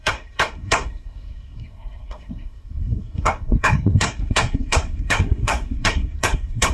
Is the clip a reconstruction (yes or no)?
yes